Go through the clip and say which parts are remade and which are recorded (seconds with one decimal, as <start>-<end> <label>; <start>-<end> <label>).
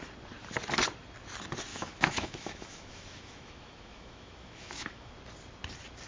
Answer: 0.0-1.7 recorded; 1.7-5.1 remade; 5.1-6.1 recorded